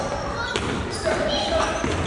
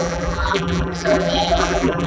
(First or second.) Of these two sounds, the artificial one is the second